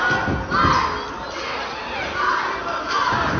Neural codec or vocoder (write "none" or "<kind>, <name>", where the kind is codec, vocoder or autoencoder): none